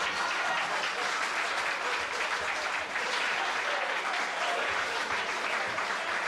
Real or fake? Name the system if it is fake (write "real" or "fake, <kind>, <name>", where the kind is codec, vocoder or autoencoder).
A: real